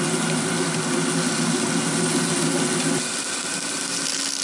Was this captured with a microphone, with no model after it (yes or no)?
yes